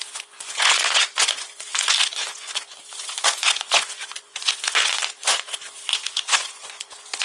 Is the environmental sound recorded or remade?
remade